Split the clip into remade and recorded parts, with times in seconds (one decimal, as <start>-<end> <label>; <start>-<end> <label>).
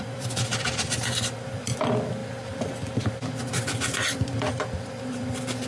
0.0-0.5 remade; 0.5-1.5 recorded; 1.5-5.7 remade